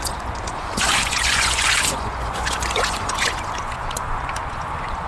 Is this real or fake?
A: fake